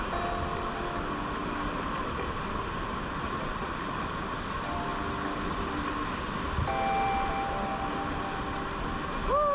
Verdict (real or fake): real